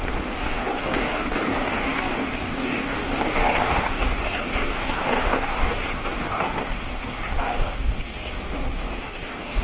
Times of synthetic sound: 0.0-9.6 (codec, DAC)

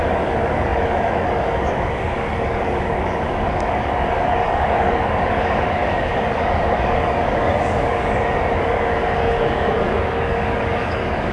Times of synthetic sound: 0.0-11.3 (codec, DAC)